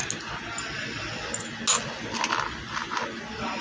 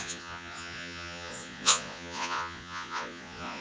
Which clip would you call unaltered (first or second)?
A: first